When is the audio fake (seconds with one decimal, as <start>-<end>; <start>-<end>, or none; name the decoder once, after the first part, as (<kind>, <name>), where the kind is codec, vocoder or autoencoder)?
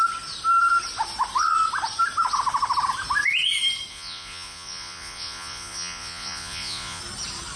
3.9-7.0 (vocoder, Vocos)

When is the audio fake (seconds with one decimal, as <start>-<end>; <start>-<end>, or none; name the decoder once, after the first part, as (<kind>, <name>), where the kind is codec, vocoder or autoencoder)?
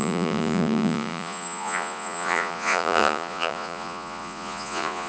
0.0-5.1 (vocoder, Vocos)